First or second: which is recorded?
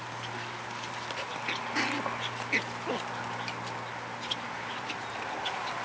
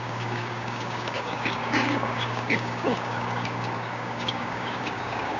first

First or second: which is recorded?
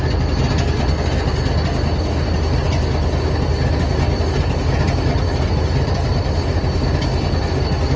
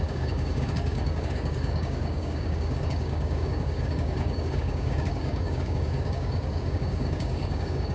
first